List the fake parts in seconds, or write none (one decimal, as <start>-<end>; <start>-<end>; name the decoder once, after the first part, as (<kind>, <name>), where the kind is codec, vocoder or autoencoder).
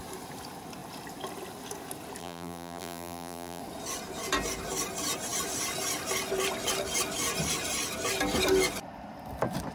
2.2-3.6 (vocoder, BigVGAN v2)